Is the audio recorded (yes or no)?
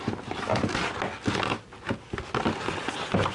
yes